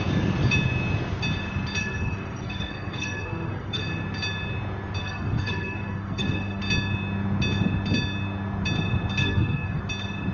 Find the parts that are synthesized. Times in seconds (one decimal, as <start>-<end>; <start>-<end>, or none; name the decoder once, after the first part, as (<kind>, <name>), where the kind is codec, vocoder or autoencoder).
1.8-3.8 (codec, SNAC); 5.0-6.6; 9.2-9.8